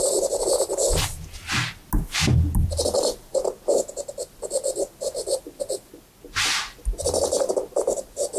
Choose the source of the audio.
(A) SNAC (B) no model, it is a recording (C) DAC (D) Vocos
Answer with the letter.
B